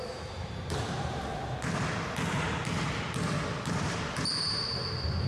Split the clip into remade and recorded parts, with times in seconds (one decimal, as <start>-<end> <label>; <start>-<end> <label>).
0.0-1.3 remade; 1.3-3.7 recorded; 3.7-5.3 remade